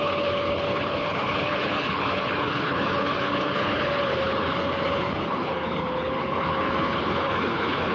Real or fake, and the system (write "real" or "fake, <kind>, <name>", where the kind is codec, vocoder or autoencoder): fake, codec, HILCodec